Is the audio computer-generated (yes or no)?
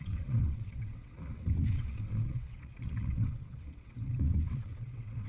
yes